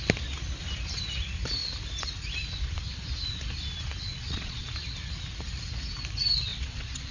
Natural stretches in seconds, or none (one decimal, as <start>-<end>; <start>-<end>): 0.0-4.1; 4.7-6.5